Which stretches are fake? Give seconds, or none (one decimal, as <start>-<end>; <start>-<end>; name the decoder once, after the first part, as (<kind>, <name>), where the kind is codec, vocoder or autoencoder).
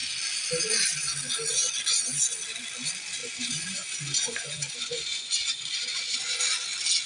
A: 3.2-6.4 (vocoder, Vocos)